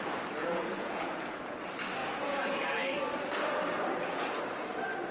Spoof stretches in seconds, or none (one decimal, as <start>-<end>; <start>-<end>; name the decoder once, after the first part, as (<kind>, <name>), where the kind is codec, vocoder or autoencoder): 0.4-1.6 (vocoder, Vocos); 2.0-2.6